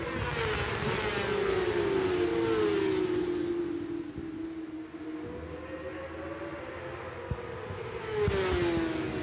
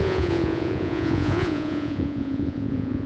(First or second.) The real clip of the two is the first